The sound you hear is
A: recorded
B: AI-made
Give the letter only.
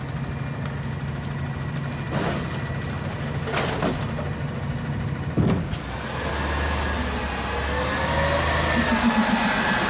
A